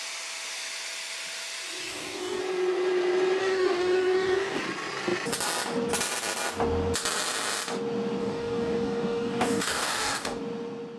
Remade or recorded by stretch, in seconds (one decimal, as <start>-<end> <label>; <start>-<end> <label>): 0.0-1.8 recorded; 1.8-2.4 remade; 2.4-3.4 recorded; 3.4-4.6 remade; 4.6-8.2 recorded; 8.2-10.4 remade; 10.4-11.0 recorded